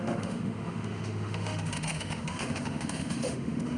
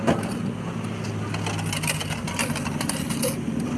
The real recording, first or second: second